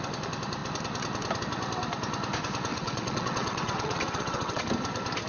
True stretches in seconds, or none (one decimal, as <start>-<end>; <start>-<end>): 0.0-2.7; 4.6-5.3